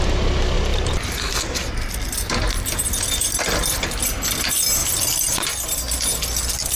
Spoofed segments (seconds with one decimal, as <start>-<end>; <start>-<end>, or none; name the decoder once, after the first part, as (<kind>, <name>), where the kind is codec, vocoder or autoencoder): 0.7-4.0 (vocoder, BigVGAN v2); 4.8-5.8